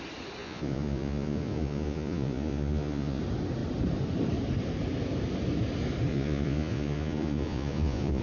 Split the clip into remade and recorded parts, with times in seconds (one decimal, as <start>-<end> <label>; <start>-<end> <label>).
0.0-0.4 recorded; 0.4-3.2 remade; 3.2-6.1 recorded; 6.1-8.2 remade